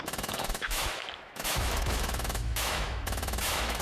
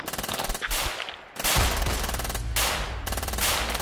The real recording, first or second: second